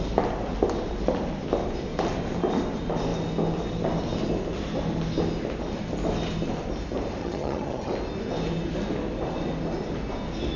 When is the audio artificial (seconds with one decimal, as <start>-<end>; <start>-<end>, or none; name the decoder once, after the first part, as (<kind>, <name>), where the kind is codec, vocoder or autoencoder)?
7.2-7.9 (vocoder, HiFi-GAN)